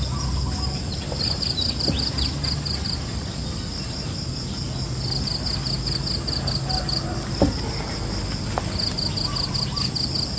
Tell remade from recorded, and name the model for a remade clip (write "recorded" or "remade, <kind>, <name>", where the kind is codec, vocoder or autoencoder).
recorded